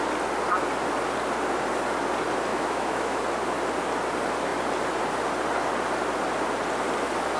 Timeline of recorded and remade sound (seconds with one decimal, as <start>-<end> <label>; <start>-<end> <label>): 0.0-2.5 recorded; 2.5-3.2 remade; 3.2-7.4 recorded